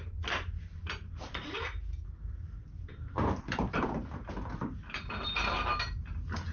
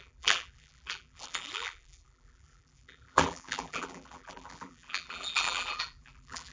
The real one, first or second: first